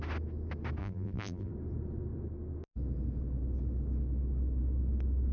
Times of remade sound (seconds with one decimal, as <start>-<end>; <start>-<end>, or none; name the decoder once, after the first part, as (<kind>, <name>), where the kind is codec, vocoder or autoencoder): 0.8-1.5 (vocoder, BigVGAN v2)